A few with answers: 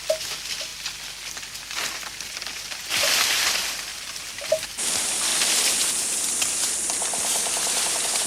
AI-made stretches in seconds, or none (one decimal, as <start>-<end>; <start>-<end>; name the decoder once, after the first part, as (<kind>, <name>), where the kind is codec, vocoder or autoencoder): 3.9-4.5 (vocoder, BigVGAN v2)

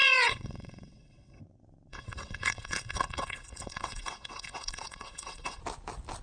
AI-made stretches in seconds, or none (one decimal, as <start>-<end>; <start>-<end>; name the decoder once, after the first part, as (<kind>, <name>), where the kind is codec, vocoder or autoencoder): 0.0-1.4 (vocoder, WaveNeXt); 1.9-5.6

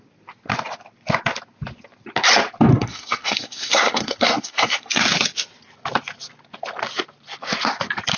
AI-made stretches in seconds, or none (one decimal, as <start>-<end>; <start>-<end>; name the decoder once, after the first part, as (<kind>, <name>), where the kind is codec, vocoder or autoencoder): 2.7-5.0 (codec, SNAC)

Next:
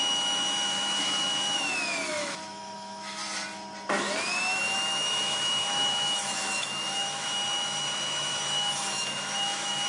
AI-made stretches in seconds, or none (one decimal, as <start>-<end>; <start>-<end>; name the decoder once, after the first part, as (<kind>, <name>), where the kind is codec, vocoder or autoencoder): 0.0-3.2 (autoencoder, DAC-VAE); 4.3-9.9